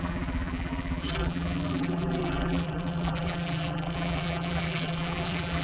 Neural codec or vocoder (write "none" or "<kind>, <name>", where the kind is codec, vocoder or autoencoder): vocoder, BigVGAN v2